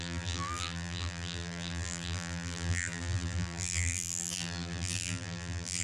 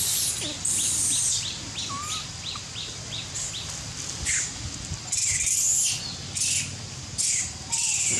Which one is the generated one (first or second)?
first